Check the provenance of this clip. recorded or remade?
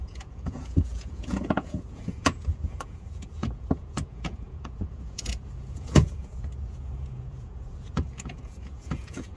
remade